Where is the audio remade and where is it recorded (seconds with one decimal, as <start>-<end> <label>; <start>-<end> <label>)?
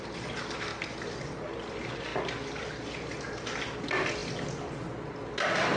0.0-5.8 recorded